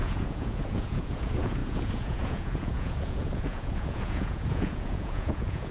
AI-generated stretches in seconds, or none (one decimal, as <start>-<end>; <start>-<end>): 0.0-5.7